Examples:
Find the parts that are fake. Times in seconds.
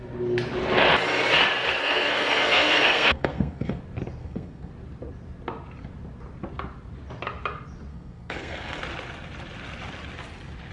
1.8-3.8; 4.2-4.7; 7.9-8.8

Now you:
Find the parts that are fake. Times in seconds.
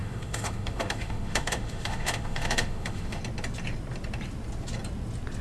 0.0-3.2